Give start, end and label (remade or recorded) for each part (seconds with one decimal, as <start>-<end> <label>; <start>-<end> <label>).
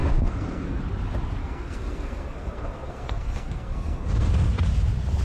0.0-0.8 remade; 0.8-1.4 recorded; 1.4-4.5 remade; 4.5-5.2 recorded